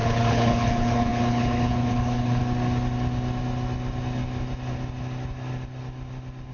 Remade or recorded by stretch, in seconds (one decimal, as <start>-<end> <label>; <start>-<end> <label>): 0.0-2.4 remade; 2.4-6.5 recorded